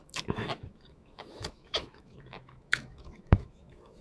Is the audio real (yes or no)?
no